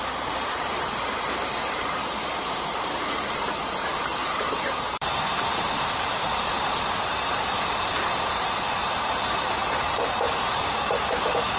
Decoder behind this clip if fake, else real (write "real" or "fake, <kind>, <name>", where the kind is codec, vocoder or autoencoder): fake, vocoder, BigVGAN v2